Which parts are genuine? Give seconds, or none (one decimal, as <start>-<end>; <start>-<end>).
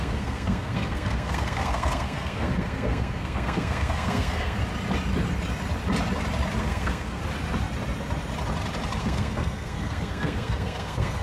4.6-6.6; 7.2-9.0